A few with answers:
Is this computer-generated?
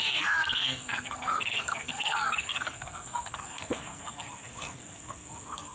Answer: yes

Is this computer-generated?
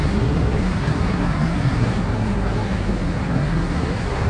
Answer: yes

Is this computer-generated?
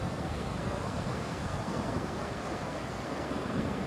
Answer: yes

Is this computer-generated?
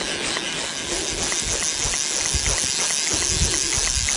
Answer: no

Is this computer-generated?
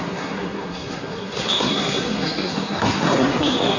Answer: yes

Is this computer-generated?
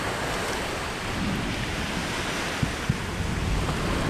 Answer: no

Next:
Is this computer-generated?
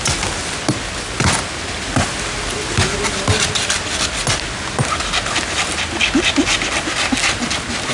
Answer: no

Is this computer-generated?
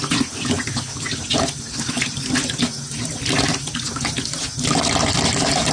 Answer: no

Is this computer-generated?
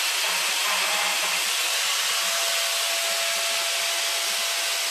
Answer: no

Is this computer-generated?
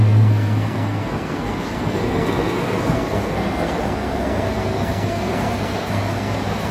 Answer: yes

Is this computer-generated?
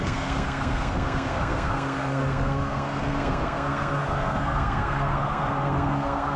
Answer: yes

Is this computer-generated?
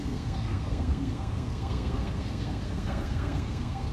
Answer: yes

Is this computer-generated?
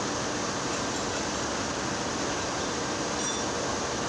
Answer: no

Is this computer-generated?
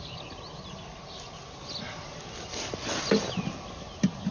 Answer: no